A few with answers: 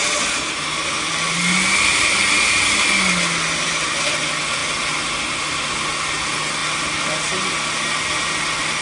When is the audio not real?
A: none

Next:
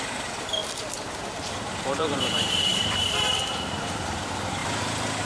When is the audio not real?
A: 0.0-0.6 (vocoder, BigVGAN v2); 1.1-5.2

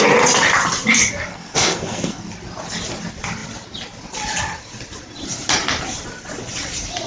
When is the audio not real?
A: 1.3-2.3 (codec, SNAC)

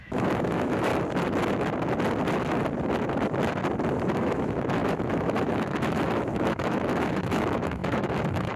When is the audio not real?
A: 0.0-0.9 (autoencoder, DAC-VAE); 4.1-8.6

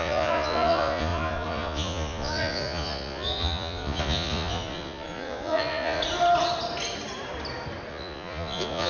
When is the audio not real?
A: 0.0-6.0 (vocoder, Vocos); 7.9-8.9

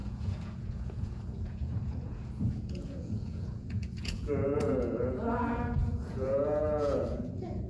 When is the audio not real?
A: 0.0-7.7 (vocoder, Vocos)

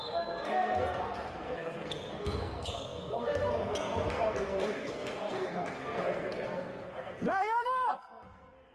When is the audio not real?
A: 0.0-8.7 (codec, SNAC)